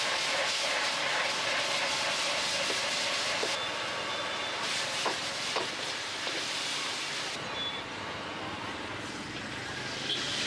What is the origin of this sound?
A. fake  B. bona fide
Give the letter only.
B